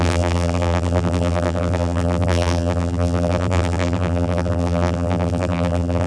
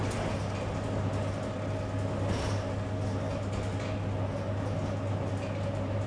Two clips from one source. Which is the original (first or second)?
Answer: second